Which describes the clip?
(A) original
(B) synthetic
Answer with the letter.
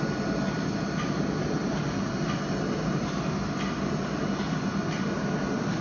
A